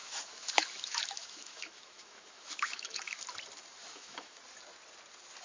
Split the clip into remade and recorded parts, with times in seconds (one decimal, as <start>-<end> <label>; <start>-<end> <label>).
0.0-3.2 remade; 3.2-3.8 recorded; 3.8-4.4 remade; 4.4-5.4 recorded